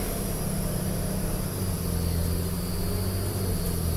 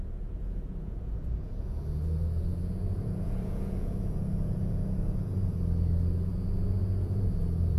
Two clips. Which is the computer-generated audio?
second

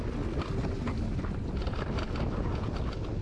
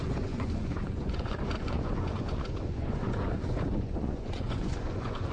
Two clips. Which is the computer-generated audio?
second